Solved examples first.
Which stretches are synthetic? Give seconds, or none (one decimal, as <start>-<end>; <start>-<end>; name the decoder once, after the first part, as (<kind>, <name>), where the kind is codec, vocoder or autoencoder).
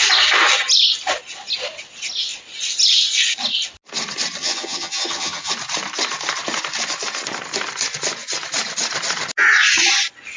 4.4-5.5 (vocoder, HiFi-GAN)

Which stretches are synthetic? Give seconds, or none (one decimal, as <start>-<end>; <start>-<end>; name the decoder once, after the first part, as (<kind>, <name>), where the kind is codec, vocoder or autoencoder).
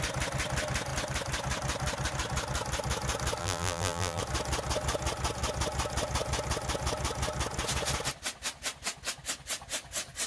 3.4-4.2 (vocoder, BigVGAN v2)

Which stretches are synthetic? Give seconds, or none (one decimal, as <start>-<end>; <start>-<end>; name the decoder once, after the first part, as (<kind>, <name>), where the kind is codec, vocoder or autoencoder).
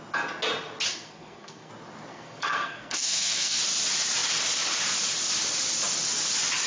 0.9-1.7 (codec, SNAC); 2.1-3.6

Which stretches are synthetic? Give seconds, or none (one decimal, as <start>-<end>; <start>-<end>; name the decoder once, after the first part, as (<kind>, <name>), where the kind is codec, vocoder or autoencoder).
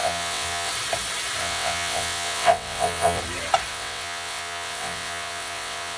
0.0-0.7 (vocoder, WaveNeXt); 1.4-3.2; 3.7-6.0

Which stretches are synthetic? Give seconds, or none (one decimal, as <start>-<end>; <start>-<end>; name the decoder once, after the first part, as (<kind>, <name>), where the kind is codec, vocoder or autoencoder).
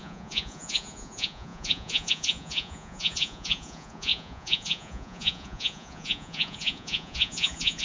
0.0-7.8 (vocoder, Vocos)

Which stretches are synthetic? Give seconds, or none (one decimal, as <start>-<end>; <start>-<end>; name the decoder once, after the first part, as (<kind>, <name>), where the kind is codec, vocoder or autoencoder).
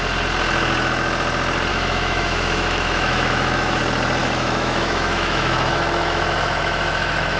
1.7-3.8 (autoencoder, DAC-VAE); 4.2-7.4